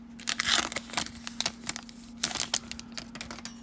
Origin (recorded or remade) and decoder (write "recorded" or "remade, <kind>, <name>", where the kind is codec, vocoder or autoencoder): recorded